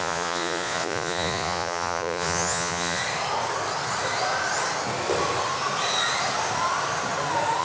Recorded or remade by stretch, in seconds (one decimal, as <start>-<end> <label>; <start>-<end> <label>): 0.0-3.0 remade; 3.0-7.6 recorded